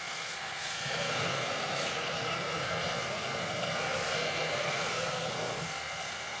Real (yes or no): no